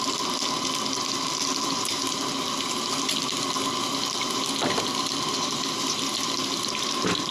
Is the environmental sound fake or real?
real